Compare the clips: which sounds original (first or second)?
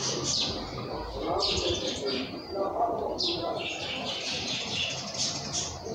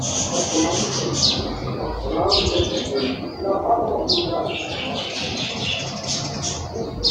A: second